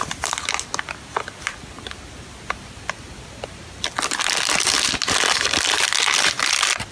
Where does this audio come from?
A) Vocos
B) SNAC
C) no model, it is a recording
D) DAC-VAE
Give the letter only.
C